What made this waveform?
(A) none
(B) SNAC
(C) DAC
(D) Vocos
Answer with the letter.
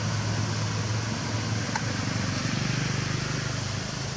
A